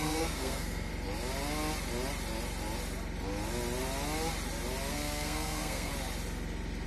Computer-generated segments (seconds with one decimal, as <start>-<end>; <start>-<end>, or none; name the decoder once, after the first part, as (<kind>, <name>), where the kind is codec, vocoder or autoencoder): 0.0-0.9 (codec, SNAC); 4.9-5.9

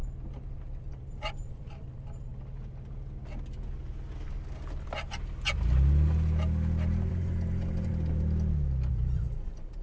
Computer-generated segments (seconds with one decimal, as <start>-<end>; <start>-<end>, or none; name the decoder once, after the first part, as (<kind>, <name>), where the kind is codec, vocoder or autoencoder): 0.8-2.3 (vocoder, BigVGAN v2); 7.1-7.9; 8.9-9.8

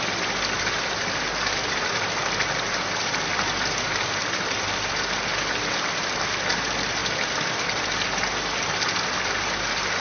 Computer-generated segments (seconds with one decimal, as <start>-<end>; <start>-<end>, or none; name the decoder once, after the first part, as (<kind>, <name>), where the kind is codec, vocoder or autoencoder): none

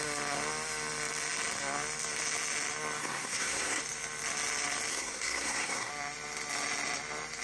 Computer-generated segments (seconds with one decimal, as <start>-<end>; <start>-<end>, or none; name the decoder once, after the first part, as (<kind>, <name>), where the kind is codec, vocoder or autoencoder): 3.0-3.8 (codec, SNAC); 4.9-5.9

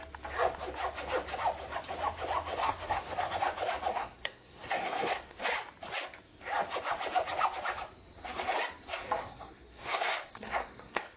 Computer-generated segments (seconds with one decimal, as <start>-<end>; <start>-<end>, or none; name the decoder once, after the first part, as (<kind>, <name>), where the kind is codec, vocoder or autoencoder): 2.6-3.3 (codec, SNAC); 3.9-5.4; 9.2-11.2